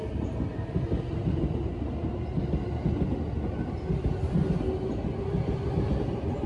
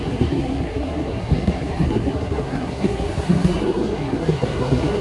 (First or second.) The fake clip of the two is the second